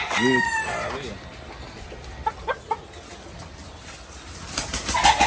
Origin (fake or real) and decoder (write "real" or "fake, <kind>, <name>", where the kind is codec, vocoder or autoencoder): real